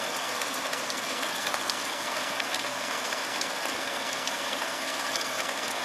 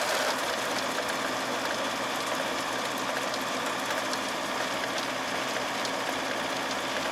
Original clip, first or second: second